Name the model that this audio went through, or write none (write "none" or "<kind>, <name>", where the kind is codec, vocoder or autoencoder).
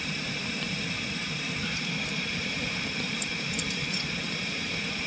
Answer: vocoder, BigVGAN v2